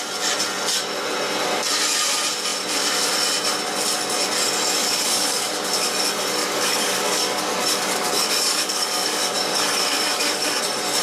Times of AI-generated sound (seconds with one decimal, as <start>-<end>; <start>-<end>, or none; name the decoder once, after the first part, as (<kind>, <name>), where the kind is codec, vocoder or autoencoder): 4.8-5.7 (codec, DAC); 6.4-10.6